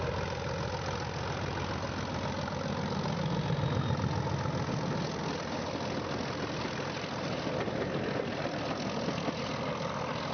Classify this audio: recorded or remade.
recorded